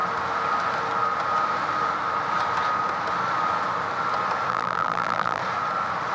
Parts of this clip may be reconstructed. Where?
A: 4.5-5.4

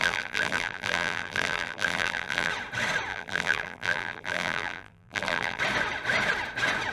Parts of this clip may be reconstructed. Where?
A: 0.0-2.5; 3.1-5.6

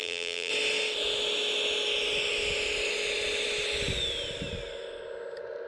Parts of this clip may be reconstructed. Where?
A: 0.0-0.5

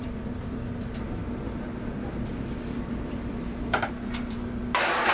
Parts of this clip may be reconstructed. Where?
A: 0.0-1.2; 2.9-5.1